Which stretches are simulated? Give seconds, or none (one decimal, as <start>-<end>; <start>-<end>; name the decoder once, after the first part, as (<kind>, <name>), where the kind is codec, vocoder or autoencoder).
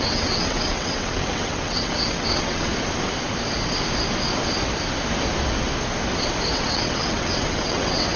0.0-2.7 (vocoder, WaveNeXt); 6.5-8.2